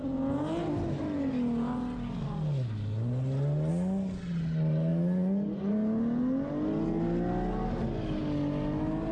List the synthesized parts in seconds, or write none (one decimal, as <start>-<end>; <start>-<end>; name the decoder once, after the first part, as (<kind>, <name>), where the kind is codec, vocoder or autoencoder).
none